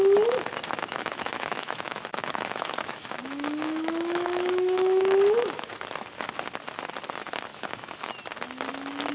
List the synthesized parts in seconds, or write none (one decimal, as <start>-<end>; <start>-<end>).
0.8-5.7; 7.5-8.1